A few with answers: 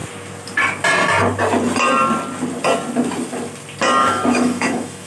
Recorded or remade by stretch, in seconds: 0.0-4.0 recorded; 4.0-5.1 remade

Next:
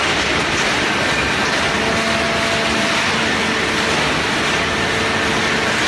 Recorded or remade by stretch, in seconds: 0.0-5.9 recorded

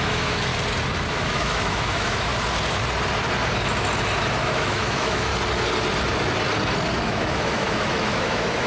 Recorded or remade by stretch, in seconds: 0.0-0.5 remade; 0.5-1.1 recorded; 1.1-2.3 remade; 2.3-4.4 recorded; 4.4-5.3 remade; 5.3-6.9 recorded; 6.9-8.7 remade

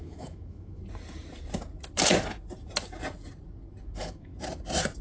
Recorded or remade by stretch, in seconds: 0.0-0.8 remade; 0.8-3.8 recorded; 3.8-4.3 remade; 4.3-5.0 recorded